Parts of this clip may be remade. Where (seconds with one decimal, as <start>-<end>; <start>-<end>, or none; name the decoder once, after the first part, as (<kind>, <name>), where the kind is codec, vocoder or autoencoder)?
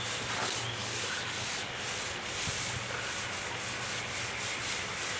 0.8-1.7 (codec, DAC)